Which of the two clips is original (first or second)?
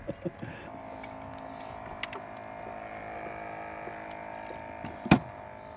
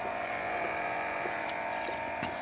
first